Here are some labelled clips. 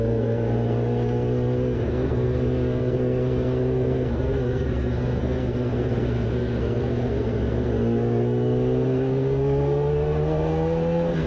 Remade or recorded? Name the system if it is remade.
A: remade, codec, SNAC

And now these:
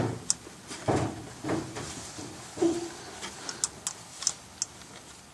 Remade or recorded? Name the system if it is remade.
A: recorded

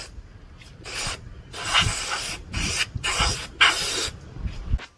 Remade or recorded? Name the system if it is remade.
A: recorded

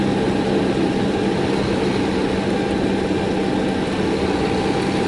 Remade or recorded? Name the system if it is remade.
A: recorded